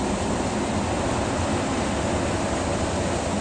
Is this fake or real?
real